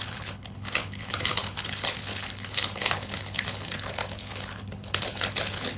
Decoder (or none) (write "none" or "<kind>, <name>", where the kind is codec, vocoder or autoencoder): codec, HILCodec